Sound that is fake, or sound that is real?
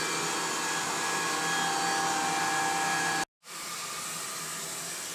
real